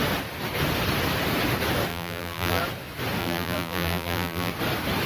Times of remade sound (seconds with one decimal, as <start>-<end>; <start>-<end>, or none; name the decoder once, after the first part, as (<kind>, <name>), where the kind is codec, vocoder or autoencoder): 1.9-2.6 (vocoder, BigVGAN v2); 3.2-4.5